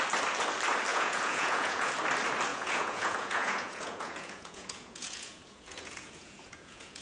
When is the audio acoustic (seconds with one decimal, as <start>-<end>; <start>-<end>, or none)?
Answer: 0.0-0.9; 1.9-2.5